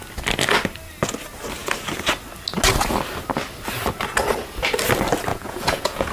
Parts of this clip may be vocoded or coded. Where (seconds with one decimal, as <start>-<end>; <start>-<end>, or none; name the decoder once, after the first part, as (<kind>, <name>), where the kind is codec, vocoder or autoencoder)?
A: 5.3-6.1 (vocoder, Vocos)